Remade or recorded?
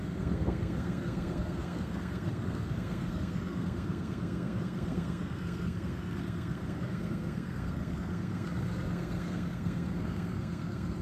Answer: remade